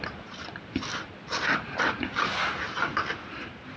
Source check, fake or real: real